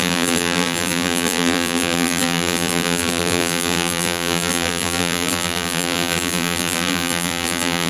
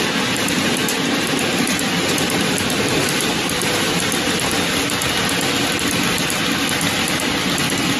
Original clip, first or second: second